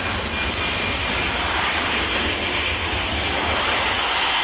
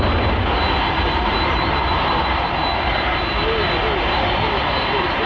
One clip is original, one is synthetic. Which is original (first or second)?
first